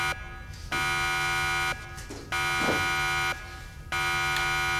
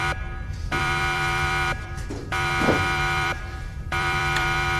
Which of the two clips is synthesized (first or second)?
second